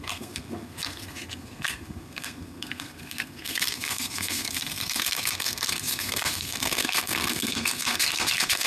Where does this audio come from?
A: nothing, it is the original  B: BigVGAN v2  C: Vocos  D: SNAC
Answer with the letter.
D